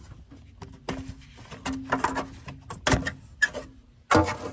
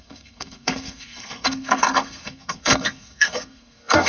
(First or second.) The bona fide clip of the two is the first